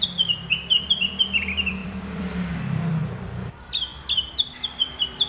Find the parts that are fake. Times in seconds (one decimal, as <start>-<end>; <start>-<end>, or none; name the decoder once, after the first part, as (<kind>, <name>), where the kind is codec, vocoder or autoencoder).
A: 0.0-5.3 (vocoder, BigVGAN v2)